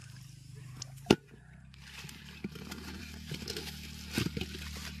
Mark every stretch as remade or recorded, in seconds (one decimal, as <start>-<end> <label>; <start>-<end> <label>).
0.0-5.0 recorded